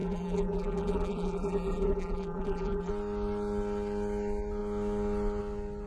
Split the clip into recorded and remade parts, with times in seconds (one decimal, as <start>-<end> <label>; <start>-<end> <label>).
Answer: 0.0-2.9 remade; 2.9-5.9 recorded